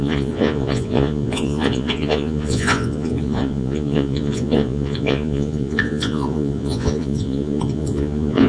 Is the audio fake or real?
fake